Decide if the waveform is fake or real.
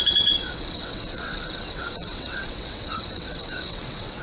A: fake